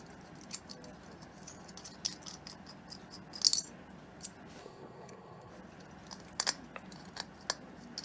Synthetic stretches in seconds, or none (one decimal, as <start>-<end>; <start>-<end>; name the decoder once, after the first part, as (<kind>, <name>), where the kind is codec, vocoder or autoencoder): 4.6-5.5 (codec, SNAC)